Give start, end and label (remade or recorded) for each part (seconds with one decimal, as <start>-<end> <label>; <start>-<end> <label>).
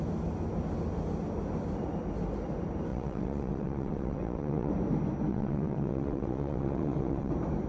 0.0-2.9 recorded; 2.9-4.7 remade; 4.7-5.3 recorded; 5.3-7.3 remade; 7.3-7.7 recorded